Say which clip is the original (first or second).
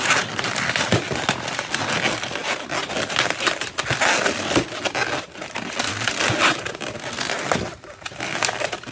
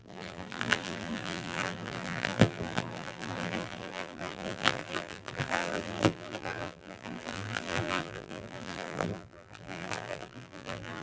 first